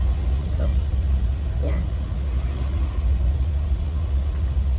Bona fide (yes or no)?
no